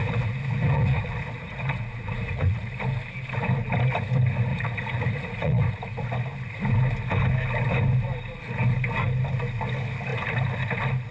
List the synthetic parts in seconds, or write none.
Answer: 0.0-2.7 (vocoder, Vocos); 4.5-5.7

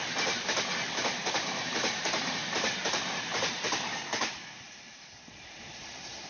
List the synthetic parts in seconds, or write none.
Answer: 1.0-6.3 (vocoder, BigVGAN v2)

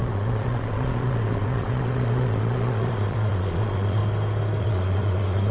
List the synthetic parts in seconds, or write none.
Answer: 0.0-4.0 (vocoder, Vocos); 4.6-5.5

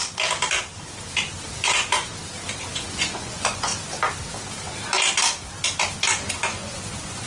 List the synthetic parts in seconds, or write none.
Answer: 1.5-2.1 (vocoder, Vocos); 2.7-3.7; 6.3-7.3